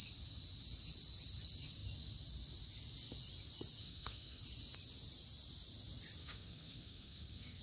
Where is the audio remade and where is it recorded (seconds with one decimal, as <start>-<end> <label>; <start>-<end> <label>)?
0.0-3.8 recorded; 3.8-4.4 remade; 4.4-6.2 recorded; 6.2-7.6 remade